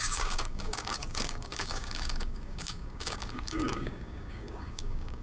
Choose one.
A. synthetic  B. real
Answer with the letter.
A